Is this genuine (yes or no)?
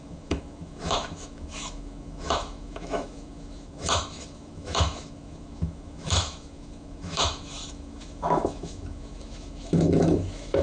no